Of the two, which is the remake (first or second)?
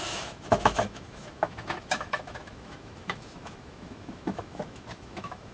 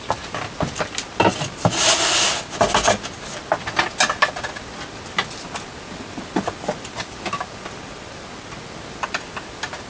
first